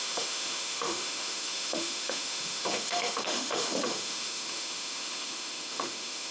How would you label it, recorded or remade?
remade